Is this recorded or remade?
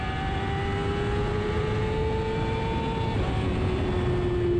recorded